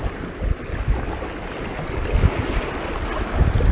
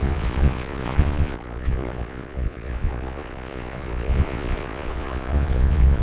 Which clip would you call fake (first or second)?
second